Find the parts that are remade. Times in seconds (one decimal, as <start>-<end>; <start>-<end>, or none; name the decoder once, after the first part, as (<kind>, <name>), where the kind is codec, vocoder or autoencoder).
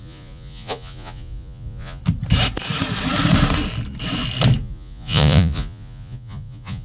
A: 0.0-2.0 (vocoder, Vocos); 4.6-6.8